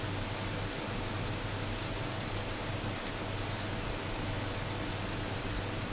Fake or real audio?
real